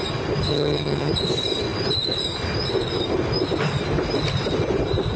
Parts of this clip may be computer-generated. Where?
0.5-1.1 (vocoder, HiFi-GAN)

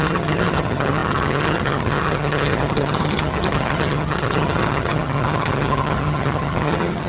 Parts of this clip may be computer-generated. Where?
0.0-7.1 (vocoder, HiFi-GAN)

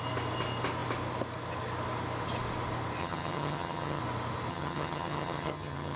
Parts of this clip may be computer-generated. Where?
3.0-4.0 (vocoder, HiFi-GAN); 4.5-6.0

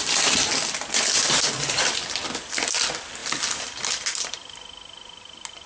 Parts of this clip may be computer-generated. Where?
none

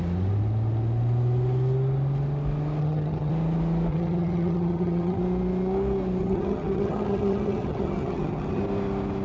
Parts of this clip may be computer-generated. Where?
2.8-3.3 (vocoder, HiFi-GAN); 3.9-5.2; 6.2-8.6